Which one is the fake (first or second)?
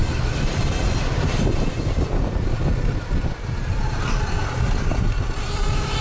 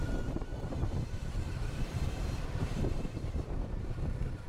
second